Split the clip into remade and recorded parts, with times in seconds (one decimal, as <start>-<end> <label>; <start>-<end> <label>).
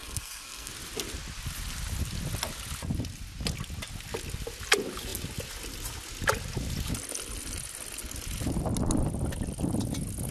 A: 0.0-0.7 remade; 0.7-10.3 recorded